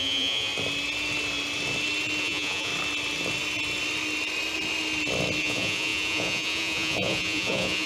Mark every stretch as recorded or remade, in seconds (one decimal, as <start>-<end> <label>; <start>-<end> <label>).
0.0-0.5 remade; 0.5-2.2 recorded; 2.2-2.7 remade; 2.7-5.4 recorded; 5.4-7.9 remade